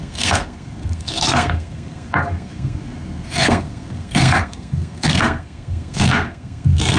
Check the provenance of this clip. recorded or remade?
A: remade